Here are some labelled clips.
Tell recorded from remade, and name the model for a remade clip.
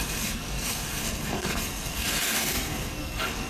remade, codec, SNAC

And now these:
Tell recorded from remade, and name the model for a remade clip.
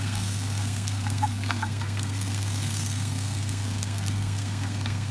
remade, codec, SNAC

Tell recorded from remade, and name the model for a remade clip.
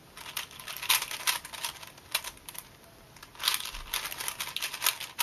recorded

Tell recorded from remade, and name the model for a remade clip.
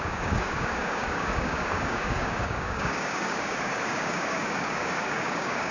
remade, codec, DAC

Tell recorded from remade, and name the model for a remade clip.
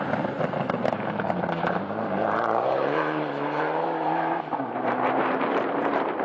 remade, vocoder, BigVGAN v2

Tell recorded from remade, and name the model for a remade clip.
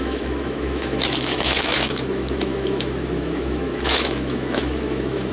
remade, autoencoder, DAC-VAE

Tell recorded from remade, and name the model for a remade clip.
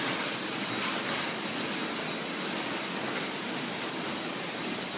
remade, vocoder, BigVGAN v2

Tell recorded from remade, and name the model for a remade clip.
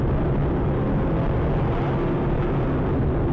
recorded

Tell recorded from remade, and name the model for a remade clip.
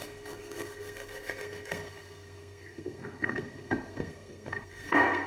remade, codec, SNAC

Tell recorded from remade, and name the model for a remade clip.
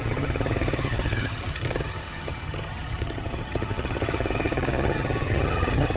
remade, vocoder, HiFi-GAN